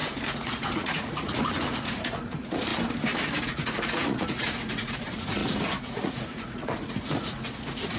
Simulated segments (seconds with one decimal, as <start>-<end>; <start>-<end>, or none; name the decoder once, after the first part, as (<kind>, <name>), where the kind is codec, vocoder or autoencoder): 0.0-2.7 (vocoder, Vocos); 3.4-8.0